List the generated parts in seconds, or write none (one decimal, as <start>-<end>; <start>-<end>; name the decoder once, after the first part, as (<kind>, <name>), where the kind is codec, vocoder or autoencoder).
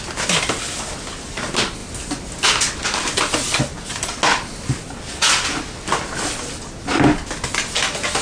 none